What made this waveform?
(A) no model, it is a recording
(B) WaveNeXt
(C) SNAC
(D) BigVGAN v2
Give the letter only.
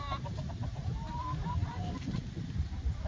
D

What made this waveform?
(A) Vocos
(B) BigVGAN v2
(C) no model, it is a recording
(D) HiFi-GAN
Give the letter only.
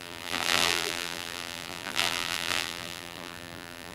B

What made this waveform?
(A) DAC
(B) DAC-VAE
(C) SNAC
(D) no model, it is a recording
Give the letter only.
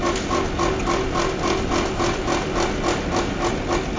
D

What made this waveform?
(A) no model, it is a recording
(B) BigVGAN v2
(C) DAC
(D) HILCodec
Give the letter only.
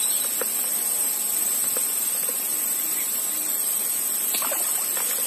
A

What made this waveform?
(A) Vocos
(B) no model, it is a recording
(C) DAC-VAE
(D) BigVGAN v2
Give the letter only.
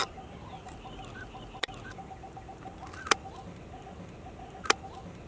D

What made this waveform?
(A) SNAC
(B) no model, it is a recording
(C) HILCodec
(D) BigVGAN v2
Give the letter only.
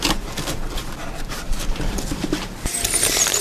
D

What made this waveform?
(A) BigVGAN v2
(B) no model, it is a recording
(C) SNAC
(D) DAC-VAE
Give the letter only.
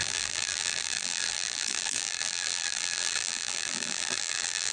A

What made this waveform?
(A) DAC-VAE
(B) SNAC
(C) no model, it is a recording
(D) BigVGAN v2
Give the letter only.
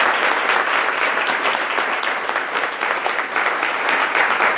C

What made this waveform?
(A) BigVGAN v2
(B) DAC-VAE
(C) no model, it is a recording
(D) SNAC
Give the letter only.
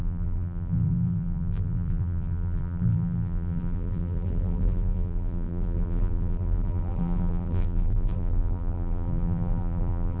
A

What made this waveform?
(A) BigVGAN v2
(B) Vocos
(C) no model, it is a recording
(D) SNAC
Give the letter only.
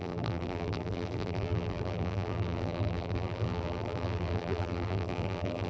A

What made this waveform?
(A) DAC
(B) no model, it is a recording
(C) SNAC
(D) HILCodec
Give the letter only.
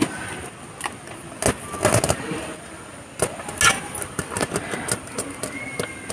B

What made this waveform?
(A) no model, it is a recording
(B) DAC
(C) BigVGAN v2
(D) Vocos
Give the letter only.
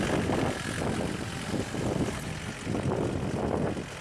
A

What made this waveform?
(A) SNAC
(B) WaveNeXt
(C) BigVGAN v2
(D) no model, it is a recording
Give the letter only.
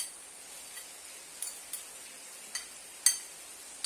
D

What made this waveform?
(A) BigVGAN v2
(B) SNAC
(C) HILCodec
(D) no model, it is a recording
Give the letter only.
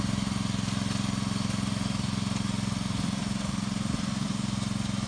D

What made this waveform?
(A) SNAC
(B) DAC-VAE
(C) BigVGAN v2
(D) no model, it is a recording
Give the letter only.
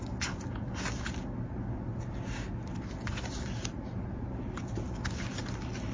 D